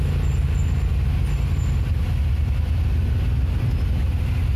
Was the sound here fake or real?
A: real